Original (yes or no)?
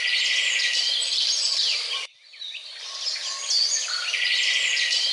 no